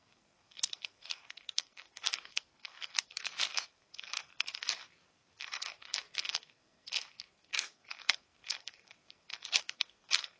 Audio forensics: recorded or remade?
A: remade